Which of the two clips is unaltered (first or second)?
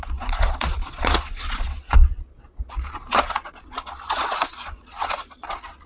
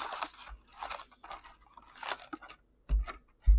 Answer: second